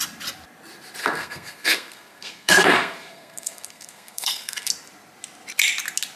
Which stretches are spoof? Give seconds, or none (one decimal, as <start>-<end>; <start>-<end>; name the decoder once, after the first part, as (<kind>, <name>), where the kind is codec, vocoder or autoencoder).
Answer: 1.0-4.7 (codec, SNAC)